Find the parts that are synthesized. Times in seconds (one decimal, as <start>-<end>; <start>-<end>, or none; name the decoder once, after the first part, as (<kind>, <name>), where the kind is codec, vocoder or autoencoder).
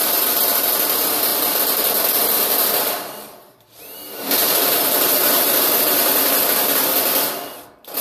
0.0-0.6 (vocoder, BigVGAN v2); 3.4-6.4